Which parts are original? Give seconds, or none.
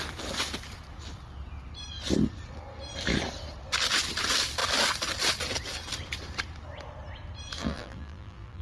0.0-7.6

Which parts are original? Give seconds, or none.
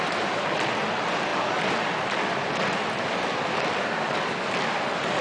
0.0-5.2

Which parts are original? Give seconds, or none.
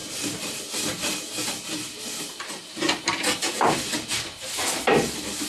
0.6-5.5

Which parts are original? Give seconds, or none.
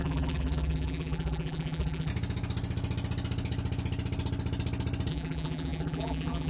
2.1-5.1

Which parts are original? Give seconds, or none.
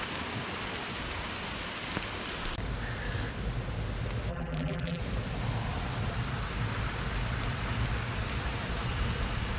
0.0-4.3; 5.0-9.6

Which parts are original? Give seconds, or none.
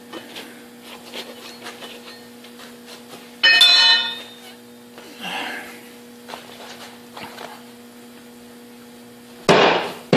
0.0-10.2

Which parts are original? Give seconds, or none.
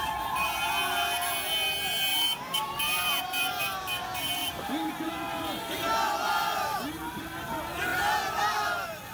0.0-2.1; 3.6-4.4; 4.9-9.1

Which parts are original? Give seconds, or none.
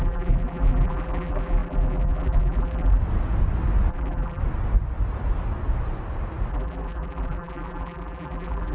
3.0-3.9; 4.4-6.5